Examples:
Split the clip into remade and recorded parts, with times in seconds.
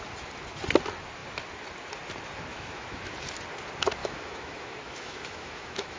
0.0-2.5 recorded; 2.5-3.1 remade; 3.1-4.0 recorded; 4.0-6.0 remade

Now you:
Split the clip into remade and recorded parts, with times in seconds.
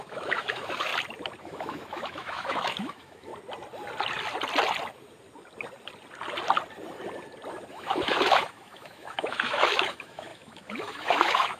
0.0-0.9 remade; 0.9-1.4 recorded; 1.4-3.3 remade; 3.3-7.7 recorded; 7.7-11.6 remade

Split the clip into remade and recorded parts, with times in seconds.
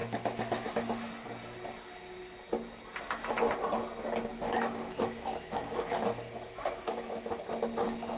0.0-1.1 remade; 1.1-4.3 recorded; 4.3-7.3 remade; 7.3-8.2 recorded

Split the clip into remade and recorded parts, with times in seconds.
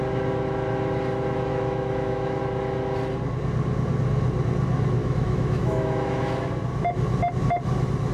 0.0-1.5 recorded; 1.5-2.4 remade; 2.4-5.0 recorded; 5.0-6.2 remade; 6.2-8.1 recorded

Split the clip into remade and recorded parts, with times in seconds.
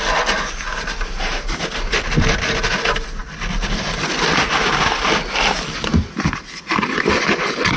0.0-7.8 recorded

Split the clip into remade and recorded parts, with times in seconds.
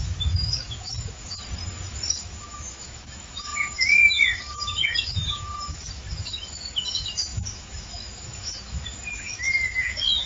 0.0-1.4 remade; 1.4-2.1 recorded; 2.1-10.3 remade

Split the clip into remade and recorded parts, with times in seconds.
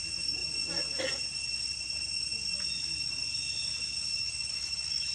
0.0-4.2 recorded; 4.2-5.1 remade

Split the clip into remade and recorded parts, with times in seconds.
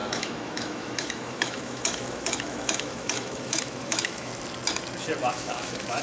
0.0-4.3 remade; 4.3-5.3 recorded; 5.3-6.0 remade